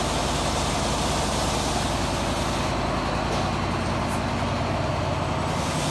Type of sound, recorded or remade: recorded